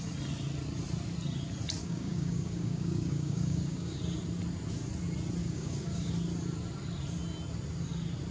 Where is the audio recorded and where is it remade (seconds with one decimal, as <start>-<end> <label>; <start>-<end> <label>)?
0.0-1.8 recorded; 1.8-4.0 remade; 4.0-5.4 recorded; 5.4-6.1 remade; 6.1-8.3 recorded